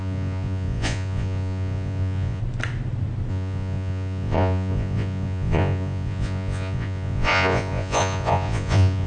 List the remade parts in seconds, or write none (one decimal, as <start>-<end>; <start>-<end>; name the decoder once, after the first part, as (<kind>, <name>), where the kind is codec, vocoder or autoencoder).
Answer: 0.0-2.4 (vocoder, Vocos); 3.3-9.1